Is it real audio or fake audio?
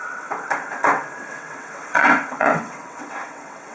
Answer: fake